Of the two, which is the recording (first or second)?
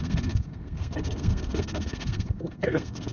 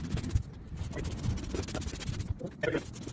second